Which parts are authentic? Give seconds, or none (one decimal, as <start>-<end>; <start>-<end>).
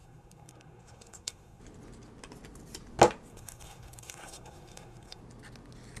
1.6-3.3; 5.2-6.0